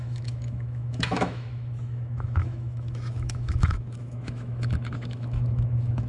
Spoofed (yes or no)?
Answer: yes